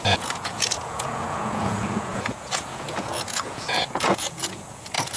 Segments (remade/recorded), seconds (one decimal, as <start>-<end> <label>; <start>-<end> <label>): 0.0-5.2 remade